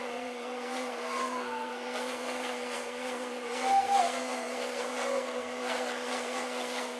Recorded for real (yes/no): no